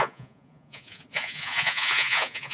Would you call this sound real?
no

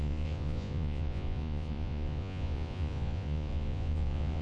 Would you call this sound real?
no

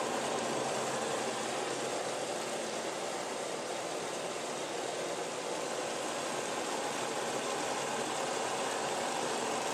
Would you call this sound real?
no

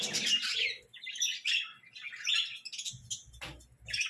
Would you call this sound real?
yes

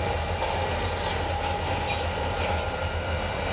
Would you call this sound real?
yes